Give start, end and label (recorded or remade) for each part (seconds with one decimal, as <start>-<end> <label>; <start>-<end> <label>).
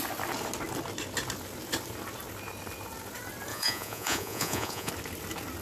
0.0-3.5 recorded; 3.5-4.9 remade; 4.9-5.6 recorded